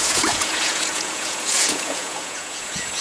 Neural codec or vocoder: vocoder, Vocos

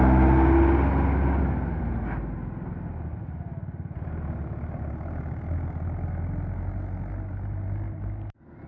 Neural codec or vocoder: none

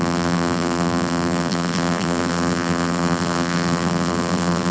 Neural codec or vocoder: vocoder, BigVGAN v2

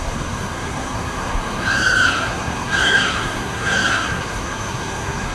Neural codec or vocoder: codec, SNAC